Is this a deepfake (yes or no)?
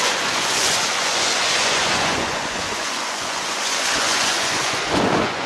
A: yes